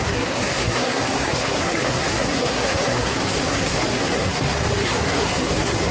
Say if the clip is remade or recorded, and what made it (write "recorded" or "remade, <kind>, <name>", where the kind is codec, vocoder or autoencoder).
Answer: remade, codec, SNAC